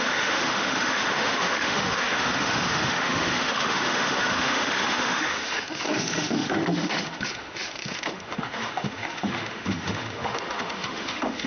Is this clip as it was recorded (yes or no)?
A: no